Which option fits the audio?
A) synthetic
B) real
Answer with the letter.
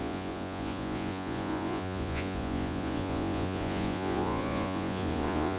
A